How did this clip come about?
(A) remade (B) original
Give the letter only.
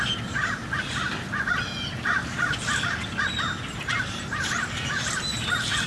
B